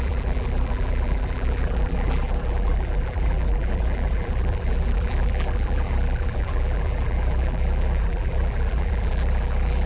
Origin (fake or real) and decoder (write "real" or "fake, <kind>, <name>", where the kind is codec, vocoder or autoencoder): fake, vocoder, BigVGAN v2